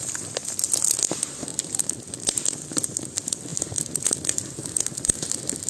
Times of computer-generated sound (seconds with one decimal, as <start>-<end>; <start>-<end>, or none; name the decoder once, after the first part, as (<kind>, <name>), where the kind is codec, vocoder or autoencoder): none